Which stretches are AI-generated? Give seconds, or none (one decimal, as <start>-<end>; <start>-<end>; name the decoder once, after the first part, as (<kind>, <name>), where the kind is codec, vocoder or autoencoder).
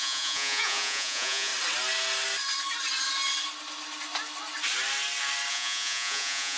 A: 0.0-1.5 (vocoder, Vocos); 5.5-6.6